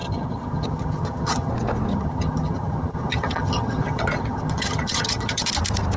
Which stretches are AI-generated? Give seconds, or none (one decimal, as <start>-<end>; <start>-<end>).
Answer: 0.0-1.5; 1.9-5.5